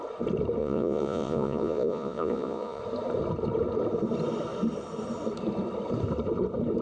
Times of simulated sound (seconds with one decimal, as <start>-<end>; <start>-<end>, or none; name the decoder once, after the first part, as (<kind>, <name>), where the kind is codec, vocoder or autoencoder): 0.6-2.8 (vocoder, Vocos)